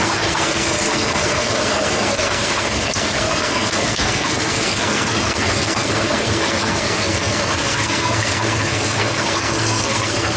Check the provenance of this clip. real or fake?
fake